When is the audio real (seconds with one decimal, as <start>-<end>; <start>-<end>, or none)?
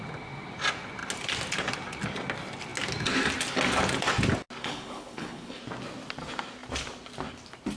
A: 0.0-4.6; 5.6-7.8